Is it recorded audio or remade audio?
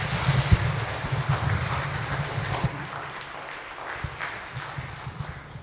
recorded